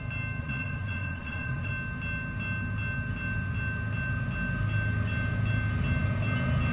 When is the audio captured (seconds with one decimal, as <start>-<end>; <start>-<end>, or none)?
0.0-0.4; 1.7-6.7